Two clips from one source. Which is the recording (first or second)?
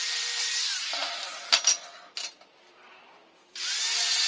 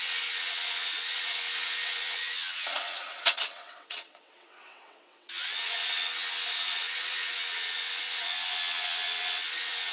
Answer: first